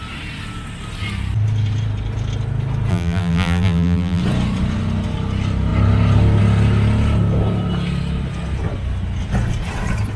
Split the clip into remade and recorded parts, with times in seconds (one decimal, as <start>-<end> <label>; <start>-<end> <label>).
0.0-2.9 recorded; 2.9-4.2 remade; 4.2-10.2 recorded